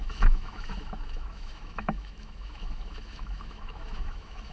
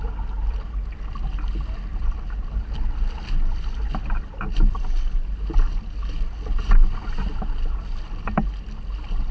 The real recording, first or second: second